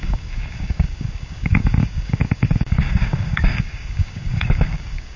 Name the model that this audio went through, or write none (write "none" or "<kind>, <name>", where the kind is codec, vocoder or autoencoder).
codec, DAC